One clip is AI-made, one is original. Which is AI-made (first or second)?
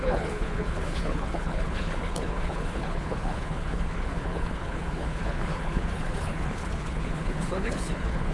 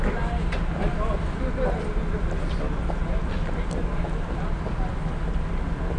first